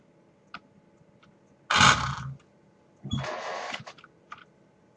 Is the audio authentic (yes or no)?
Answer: yes